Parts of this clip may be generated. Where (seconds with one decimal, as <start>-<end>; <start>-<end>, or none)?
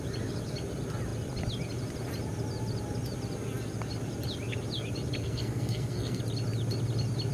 5.2-6.2